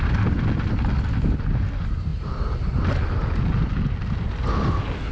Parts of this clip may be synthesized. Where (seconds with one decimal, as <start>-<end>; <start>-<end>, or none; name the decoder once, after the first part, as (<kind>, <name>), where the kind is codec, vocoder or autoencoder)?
none